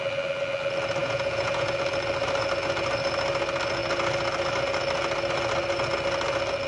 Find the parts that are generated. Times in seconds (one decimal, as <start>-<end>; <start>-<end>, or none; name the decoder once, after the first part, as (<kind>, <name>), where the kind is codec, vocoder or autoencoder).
1.0-1.7 (vocoder, Vocos)